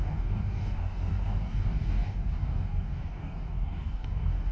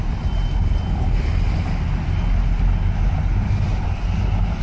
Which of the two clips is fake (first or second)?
first